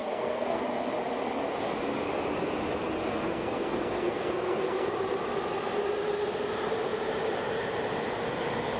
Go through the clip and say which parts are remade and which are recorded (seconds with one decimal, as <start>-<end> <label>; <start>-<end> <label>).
0.0-0.6 remade; 0.6-3.1 recorded; 3.1-4.9 remade; 4.9-8.8 recorded